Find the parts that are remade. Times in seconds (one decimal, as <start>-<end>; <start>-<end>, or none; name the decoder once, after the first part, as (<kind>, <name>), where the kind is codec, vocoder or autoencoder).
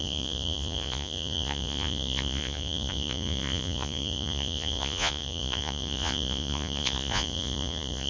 0.0-8.1 (vocoder, Vocos)